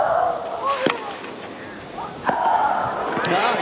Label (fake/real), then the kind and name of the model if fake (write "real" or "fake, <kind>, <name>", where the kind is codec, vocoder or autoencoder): real